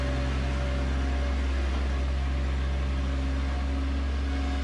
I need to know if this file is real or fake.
real